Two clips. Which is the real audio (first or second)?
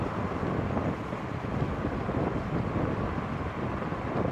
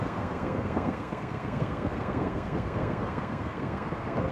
first